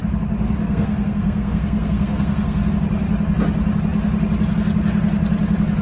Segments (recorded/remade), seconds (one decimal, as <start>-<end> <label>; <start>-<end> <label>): 0.0-0.6 recorded; 0.6-2.7 remade; 2.7-5.8 recorded